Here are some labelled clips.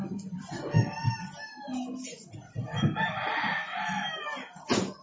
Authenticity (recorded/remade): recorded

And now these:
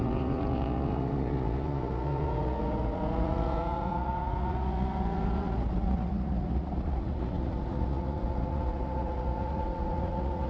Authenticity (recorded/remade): remade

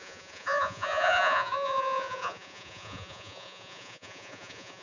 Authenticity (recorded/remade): remade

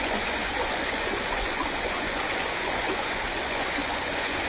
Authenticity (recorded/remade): remade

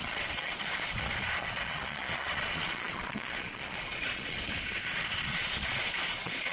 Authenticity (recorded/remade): remade